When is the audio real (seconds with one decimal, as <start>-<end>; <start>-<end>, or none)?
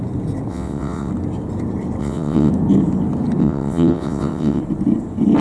0.0-0.5; 1.1-2.0; 2.5-3.4; 4.6-5.4